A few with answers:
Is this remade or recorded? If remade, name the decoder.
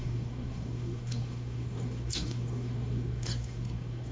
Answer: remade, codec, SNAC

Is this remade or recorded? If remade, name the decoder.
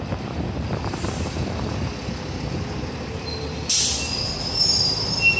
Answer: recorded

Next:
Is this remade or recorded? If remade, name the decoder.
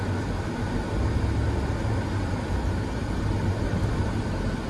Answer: recorded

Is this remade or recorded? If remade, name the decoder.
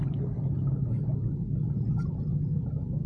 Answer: recorded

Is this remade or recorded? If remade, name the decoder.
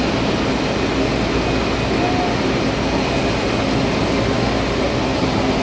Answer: recorded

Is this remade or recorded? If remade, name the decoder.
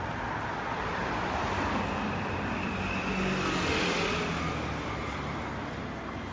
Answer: recorded